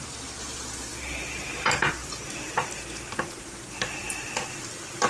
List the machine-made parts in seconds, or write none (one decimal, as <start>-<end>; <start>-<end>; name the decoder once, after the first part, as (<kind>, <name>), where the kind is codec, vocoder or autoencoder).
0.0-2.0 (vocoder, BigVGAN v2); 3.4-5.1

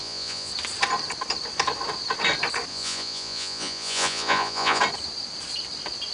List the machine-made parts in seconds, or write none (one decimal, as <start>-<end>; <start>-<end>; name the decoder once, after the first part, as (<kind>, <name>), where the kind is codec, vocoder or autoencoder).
0.0-0.5 (vocoder, Vocos); 2.7-4.8

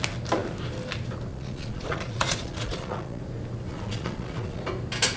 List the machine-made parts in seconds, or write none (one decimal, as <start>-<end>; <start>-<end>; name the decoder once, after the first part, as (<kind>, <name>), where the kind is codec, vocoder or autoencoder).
1.3-3.2 (vocoder, Vocos); 3.7-4.6

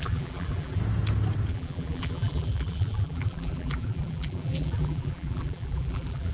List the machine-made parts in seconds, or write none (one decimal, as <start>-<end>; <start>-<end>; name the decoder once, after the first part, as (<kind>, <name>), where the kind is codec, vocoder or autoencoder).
0.0-0.8 (vocoder, BigVGAN v2); 1.5-6.3